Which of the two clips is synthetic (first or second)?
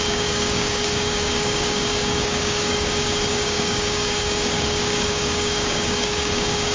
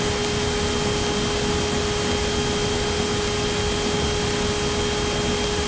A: first